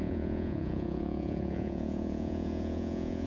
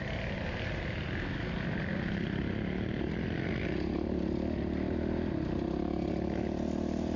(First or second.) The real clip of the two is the second